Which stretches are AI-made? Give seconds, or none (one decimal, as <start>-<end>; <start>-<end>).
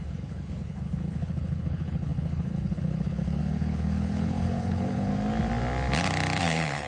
0.0-5.1; 6.4-6.9